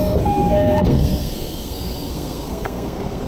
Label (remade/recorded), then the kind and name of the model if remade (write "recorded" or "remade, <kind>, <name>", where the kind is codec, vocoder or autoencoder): remade, codec, SNAC